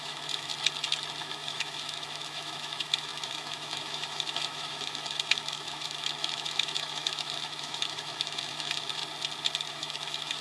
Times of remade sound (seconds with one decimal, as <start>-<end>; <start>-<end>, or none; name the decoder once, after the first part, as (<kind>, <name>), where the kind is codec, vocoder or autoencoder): 0.0-0.5 (autoencoder, DAC-VAE); 1.2-9.0; 9.7-10.4